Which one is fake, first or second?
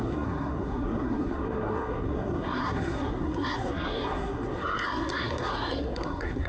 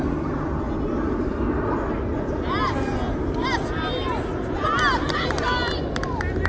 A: first